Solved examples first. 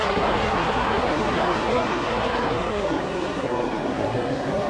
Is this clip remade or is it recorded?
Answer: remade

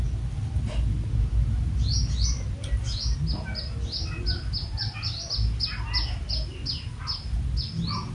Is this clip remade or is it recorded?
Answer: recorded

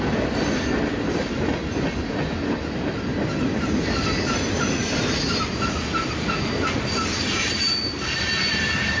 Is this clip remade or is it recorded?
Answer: recorded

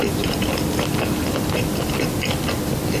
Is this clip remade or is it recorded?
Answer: recorded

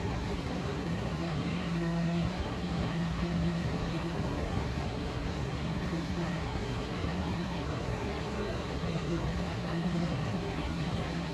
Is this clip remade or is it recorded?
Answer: remade